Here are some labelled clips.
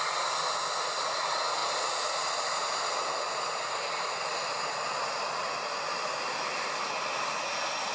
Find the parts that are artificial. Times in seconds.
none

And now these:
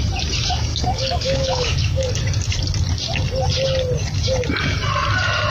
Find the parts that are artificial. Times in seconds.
0.7-2.1 (codec, DAC)

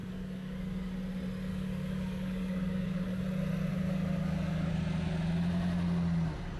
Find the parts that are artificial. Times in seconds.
0.0-0.9 (codec, DAC); 1.5-3.2; 3.7-4.7

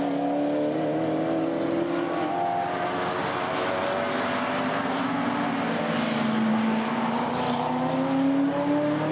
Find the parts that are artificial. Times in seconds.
6.5-7.3 (codec, DAC)